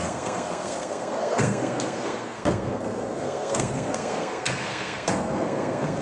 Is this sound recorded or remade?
remade